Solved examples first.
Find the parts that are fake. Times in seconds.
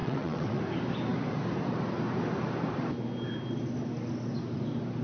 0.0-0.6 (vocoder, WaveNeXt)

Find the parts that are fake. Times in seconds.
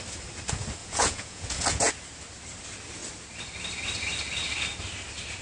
0.8-1.9 (vocoder, Vocos)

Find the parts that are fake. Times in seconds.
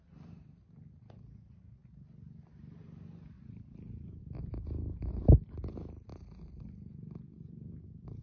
none